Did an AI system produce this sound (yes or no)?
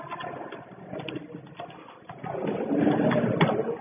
no